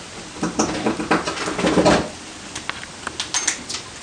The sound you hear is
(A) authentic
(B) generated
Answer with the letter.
A